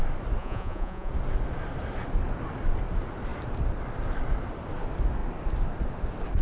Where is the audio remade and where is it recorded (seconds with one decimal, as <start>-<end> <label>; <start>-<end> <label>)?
0.0-0.4 recorded; 0.4-1.1 remade; 1.1-6.4 recorded

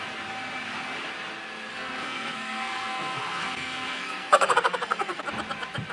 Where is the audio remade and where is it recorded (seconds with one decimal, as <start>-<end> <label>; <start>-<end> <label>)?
0.0-1.7 recorded; 1.7-5.2 remade; 5.2-5.9 recorded

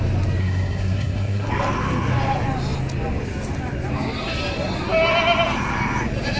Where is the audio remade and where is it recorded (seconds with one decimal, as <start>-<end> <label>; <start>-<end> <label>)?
0.0-0.4 recorded; 0.4-1.5 remade; 1.5-6.4 recorded

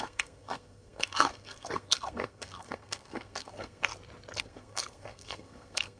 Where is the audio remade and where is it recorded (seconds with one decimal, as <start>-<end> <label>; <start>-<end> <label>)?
0.0-3.9 remade; 3.9-4.4 recorded; 4.4-6.0 remade

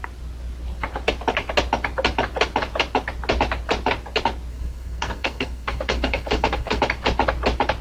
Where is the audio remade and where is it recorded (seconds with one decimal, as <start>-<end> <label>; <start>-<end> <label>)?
0.0-4.5 recorded; 4.5-6.8 remade; 6.8-7.8 recorded

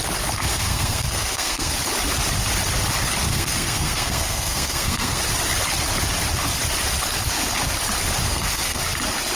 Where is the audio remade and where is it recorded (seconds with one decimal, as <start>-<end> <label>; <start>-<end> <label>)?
0.0-0.5 recorded; 0.5-1.7 remade; 1.7-3.3 recorded; 3.3-5.2 remade; 5.2-8.3 recorded; 8.3-8.8 remade; 8.8-9.4 recorded

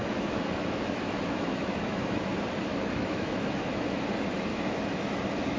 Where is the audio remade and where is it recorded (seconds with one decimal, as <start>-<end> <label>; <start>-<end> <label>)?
0.0-2.3 remade; 2.3-2.7 recorded; 2.7-4.0 remade; 4.0-4.5 recorded; 4.5-5.6 remade